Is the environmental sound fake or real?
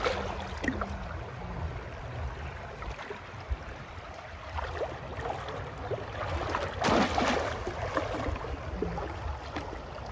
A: real